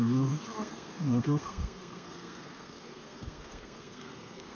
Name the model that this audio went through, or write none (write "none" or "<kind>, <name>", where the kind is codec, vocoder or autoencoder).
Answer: codec, SNAC